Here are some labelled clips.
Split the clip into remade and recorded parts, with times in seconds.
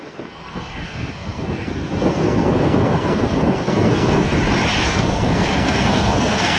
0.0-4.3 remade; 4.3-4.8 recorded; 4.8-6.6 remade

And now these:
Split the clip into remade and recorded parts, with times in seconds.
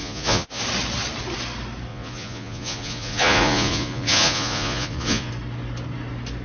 0.0-0.6 remade; 0.6-1.9 recorded; 1.9-5.3 remade; 5.3-6.4 recorded